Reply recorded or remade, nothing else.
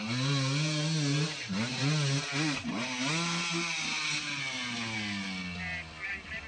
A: recorded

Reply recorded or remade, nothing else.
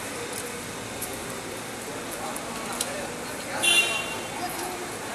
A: recorded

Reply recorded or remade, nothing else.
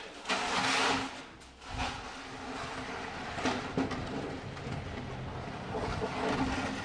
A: recorded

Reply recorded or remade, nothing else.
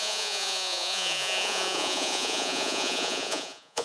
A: remade